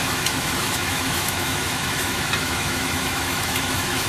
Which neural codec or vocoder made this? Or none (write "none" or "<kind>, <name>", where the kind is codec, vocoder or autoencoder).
autoencoder, DAC-VAE